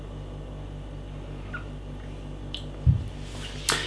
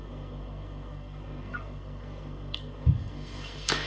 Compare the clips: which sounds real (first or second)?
first